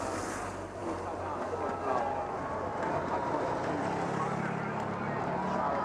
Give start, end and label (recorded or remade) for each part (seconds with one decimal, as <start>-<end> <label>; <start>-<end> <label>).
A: 0.0-5.8 recorded